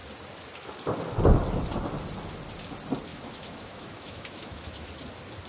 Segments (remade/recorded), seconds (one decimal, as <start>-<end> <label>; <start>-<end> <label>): 0.0-3.1 recorded; 3.1-4.9 remade; 4.9-5.5 recorded